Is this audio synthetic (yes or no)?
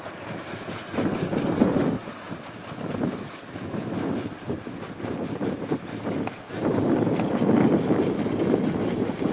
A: no